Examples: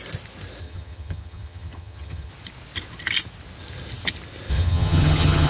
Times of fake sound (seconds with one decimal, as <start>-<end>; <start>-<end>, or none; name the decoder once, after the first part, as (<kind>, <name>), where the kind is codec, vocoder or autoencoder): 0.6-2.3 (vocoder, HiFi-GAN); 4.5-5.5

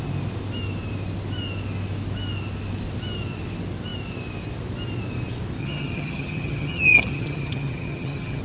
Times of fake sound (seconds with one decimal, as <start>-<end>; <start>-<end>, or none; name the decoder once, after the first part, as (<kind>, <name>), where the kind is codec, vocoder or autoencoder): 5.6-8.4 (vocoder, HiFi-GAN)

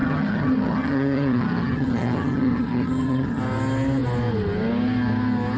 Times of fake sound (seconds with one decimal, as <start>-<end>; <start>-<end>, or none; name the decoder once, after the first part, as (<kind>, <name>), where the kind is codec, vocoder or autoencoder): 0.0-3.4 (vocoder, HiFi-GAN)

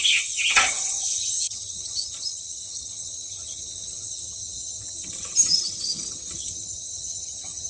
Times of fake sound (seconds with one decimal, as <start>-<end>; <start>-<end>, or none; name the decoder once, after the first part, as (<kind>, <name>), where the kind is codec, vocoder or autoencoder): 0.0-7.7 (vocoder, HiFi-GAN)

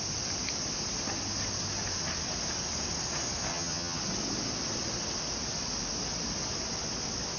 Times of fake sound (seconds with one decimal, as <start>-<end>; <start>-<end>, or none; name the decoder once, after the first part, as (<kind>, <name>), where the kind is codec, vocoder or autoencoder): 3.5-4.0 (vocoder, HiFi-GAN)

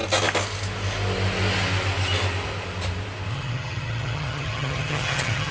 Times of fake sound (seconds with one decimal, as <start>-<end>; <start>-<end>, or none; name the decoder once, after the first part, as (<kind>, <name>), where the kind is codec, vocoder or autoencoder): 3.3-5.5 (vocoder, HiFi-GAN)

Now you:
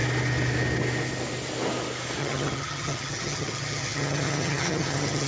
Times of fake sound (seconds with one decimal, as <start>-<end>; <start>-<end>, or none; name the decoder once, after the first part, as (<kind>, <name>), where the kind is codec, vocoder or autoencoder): 2.2-5.3 (vocoder, HiFi-GAN)

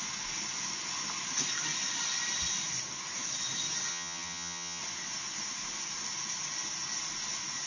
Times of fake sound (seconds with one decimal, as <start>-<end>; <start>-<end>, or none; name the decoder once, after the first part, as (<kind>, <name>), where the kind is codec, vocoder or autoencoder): 3.9-4.8 (vocoder, HiFi-GAN)